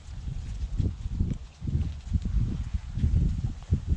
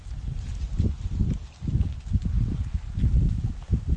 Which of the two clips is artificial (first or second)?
first